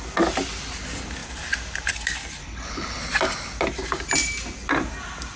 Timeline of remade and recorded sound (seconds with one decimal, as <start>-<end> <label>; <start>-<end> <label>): 0.0-2.4 recorded; 2.4-3.0 remade; 3.0-5.4 recorded